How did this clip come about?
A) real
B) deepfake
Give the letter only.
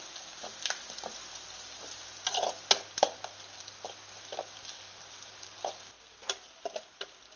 A